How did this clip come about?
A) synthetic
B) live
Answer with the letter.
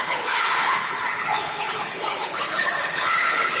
A